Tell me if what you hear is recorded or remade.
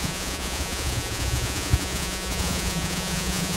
remade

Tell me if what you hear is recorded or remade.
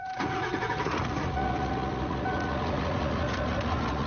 remade